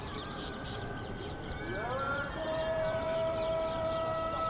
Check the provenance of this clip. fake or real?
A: fake